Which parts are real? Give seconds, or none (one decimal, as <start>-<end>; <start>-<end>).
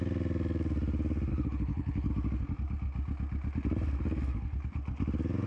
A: 0.0-1.3; 2.1-5.5